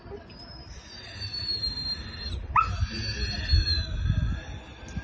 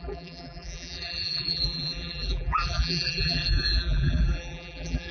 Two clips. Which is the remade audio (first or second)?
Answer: second